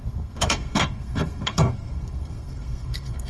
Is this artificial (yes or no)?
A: yes